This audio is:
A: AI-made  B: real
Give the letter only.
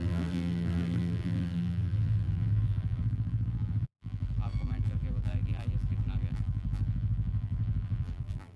A